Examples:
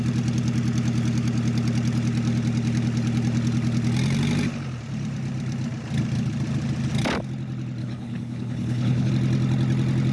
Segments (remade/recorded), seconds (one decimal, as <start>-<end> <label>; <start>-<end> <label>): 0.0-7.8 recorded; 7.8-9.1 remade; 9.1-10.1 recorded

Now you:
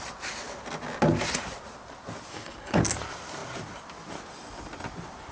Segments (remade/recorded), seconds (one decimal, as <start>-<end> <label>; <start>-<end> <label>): 0.0-2.3 recorded; 2.3-2.8 remade; 2.8-5.3 recorded

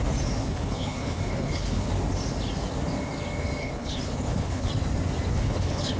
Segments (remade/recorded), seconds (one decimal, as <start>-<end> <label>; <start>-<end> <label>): 0.0-0.4 recorded; 0.4-1.9 remade; 1.9-3.6 recorded; 3.6-4.7 remade; 4.7-5.3 recorded; 5.3-6.0 remade